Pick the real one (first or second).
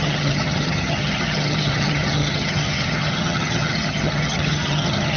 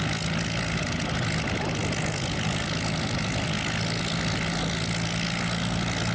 second